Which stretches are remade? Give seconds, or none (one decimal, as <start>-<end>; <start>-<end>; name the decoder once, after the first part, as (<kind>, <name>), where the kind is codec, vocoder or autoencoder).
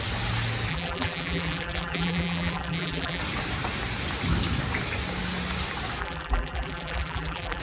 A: 0.7-3.2 (vocoder, BigVGAN v2); 6.0-7.6